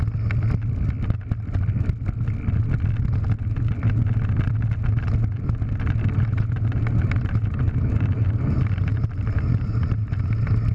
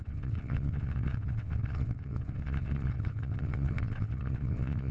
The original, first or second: first